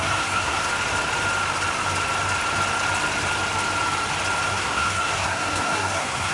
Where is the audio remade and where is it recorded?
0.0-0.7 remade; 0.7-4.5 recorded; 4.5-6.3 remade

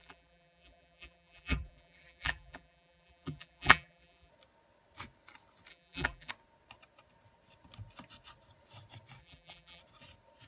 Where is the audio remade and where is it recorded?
0.0-4.3 remade; 4.3-5.7 recorded; 5.7-6.3 remade; 6.3-9.2 recorded; 9.2-9.8 remade; 9.8-10.5 recorded